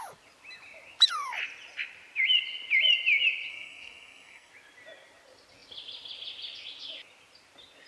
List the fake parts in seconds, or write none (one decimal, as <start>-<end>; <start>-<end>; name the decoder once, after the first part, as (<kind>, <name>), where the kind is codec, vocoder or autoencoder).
3.5-4.5 (codec, SNAC)